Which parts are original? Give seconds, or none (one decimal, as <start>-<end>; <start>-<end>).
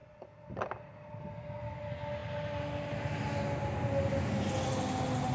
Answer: 0.0-5.3